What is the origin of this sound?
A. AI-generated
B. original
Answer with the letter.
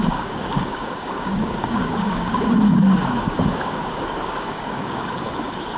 A